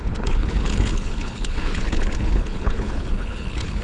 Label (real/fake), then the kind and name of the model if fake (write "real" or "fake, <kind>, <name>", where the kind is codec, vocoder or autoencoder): fake, codec, HILCodec